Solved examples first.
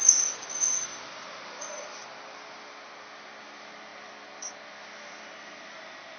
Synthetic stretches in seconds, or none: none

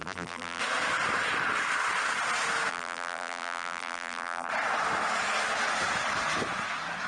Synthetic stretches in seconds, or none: 0.0-0.6 (vocoder, BigVGAN v2); 2.7-4.5

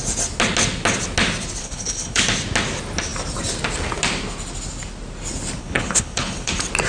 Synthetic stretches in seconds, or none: 1.6-2.2 (codec, HILCodec); 5.6-6.5

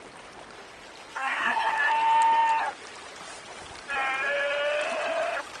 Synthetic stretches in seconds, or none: 1.1-1.7 (codec, SNAC)

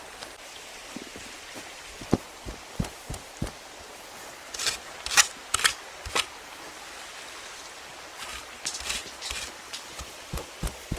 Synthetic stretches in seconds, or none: 8.3-10.5 (vocoder, BigVGAN v2)

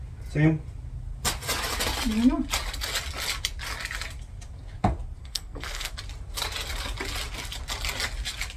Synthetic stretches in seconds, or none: 5.2-5.9 (codec, SNAC)

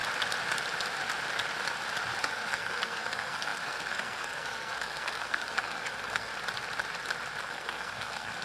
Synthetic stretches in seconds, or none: 2.2-6.3 (codec, SNAC); 7.4-8.4